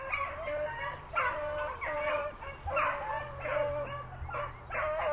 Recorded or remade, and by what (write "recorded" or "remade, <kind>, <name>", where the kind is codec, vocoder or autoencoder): recorded